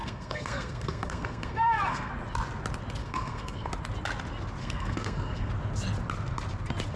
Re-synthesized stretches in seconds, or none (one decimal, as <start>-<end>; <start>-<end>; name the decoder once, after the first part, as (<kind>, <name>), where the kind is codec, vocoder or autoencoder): 0.0-2.1 (codec, SNAC); 3.0-3.7; 4.6-5.5